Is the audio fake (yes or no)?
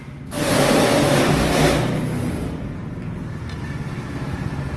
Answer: no